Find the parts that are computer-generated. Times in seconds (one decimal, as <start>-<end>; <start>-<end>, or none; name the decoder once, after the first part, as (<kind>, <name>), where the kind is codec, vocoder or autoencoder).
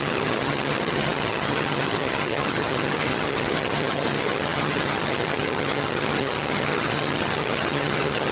0.0-8.3 (vocoder, HiFi-GAN)